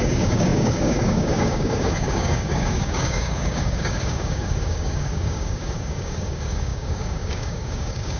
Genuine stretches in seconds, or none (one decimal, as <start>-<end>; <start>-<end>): none